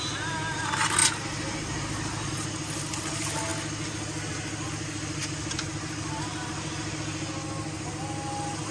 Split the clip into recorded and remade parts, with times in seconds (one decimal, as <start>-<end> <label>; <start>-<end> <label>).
0.0-8.7 recorded